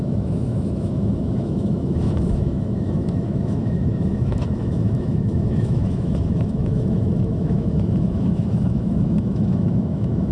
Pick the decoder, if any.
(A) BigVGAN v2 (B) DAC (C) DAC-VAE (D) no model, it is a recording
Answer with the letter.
C